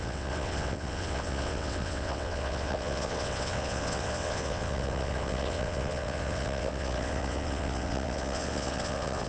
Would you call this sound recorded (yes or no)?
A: no